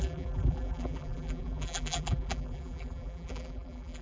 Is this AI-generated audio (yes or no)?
yes